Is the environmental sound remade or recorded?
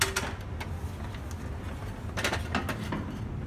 recorded